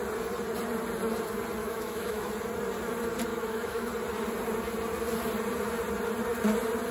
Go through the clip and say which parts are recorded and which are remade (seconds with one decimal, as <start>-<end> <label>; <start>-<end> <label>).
0.0-1.6 recorded; 1.6-2.3 remade; 2.3-3.3 recorded; 3.3-3.9 remade; 3.9-6.9 recorded